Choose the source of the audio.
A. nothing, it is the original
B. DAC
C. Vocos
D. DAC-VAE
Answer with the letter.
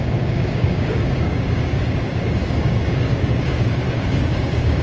B